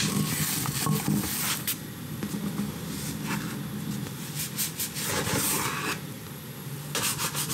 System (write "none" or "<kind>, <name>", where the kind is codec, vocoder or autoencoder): none